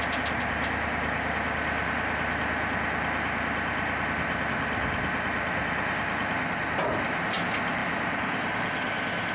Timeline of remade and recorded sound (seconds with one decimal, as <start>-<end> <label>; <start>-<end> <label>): 0.0-9.3 recorded